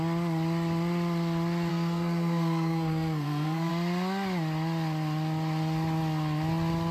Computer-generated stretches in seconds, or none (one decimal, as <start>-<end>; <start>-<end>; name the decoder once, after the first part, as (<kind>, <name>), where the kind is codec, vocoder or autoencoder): 1.7-3.7 (codec, SNAC)